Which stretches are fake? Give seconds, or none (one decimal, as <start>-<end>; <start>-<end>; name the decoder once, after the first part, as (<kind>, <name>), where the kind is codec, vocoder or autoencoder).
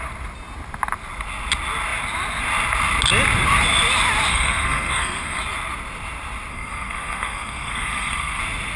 4.3-5.4 (codec, SNAC); 6.5-8.4